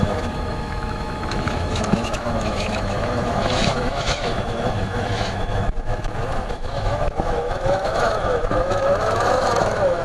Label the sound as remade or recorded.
remade